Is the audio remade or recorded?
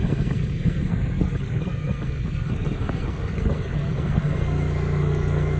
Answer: remade